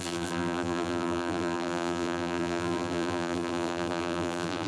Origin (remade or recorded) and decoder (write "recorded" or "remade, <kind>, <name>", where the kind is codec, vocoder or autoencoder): remade, vocoder, BigVGAN v2